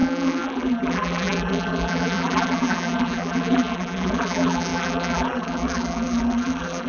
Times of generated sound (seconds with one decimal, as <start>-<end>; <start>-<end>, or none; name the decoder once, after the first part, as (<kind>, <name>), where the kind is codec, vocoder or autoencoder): 0.0-6.9 (vocoder, BigVGAN v2)